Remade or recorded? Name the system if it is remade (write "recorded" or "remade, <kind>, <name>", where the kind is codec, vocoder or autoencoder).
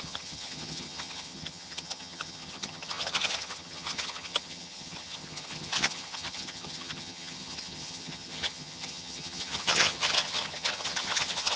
remade, vocoder, HiFi-GAN